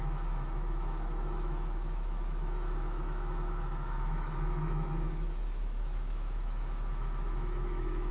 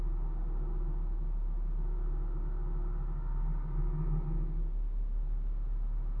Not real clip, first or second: first